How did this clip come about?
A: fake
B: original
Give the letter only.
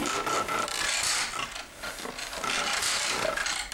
B